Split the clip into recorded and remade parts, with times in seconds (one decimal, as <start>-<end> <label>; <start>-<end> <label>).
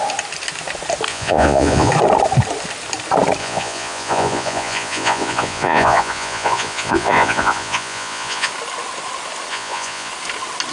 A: 0.0-1.1 recorded; 1.1-1.9 remade; 1.9-3.4 recorded; 3.4-8.5 remade; 8.5-9.5 recorded; 9.5-10.1 remade; 10.1-10.7 recorded